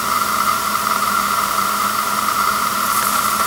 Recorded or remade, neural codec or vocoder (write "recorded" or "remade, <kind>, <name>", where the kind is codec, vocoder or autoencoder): remade, vocoder, BigVGAN v2